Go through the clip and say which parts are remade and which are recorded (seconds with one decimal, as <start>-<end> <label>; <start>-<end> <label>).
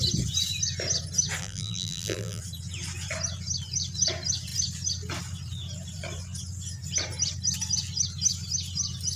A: 0.0-1.4 recorded; 1.4-2.4 remade; 2.4-9.2 recorded